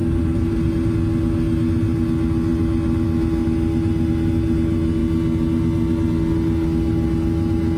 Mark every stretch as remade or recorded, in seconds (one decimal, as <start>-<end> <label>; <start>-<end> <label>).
0.0-0.9 remade; 0.9-7.8 recorded